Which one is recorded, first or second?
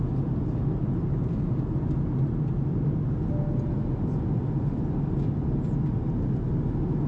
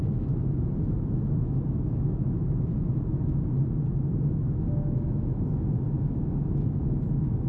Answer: first